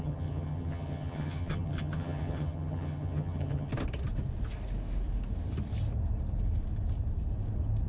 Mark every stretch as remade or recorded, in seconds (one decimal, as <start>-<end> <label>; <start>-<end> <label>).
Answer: 0.0-3.7 remade; 3.7-7.9 recorded